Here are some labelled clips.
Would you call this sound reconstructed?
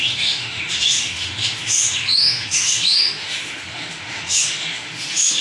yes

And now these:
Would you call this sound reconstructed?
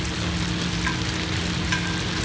no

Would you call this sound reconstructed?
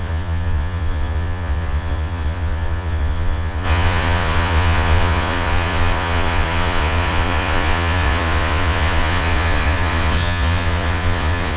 yes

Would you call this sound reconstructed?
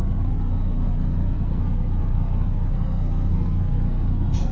yes